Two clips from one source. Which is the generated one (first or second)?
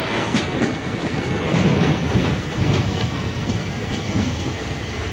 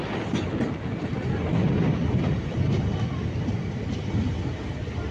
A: first